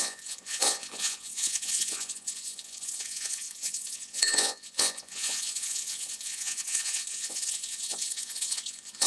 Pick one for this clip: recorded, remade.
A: remade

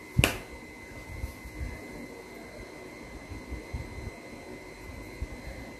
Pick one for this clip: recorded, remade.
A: recorded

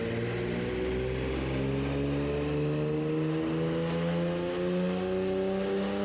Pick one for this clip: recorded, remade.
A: recorded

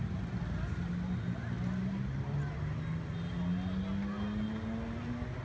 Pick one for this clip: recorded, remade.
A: recorded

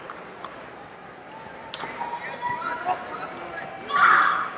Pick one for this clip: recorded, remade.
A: recorded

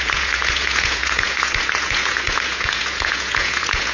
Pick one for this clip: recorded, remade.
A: remade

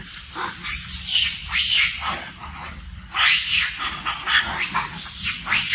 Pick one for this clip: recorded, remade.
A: recorded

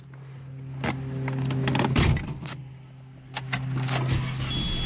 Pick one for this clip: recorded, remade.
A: recorded